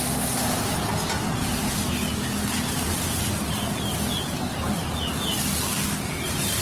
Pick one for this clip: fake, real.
real